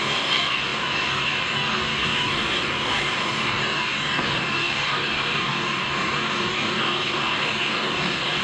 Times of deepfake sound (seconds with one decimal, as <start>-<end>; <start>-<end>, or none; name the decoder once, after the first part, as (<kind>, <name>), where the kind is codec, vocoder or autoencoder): 0.0-8.4 (codec, DAC)